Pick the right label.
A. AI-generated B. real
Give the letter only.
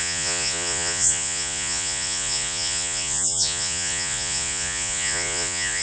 A